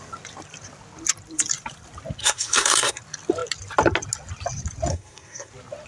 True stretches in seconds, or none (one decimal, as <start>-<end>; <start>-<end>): 0.0-2.2; 3.0-4.9; 5.5-5.9